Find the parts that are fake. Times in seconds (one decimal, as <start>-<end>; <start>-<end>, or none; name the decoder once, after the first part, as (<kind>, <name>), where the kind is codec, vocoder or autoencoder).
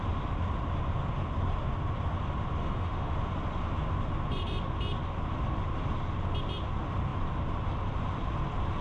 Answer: 2.6-3.1 (autoencoder, DAC-VAE)